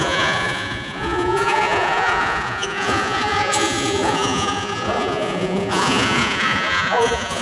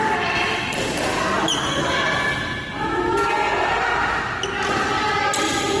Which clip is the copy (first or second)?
first